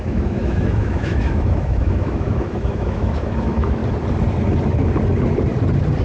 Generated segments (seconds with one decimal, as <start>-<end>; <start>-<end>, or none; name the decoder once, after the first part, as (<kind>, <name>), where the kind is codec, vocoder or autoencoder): 0.0-3.8 (autoencoder, DAC-VAE)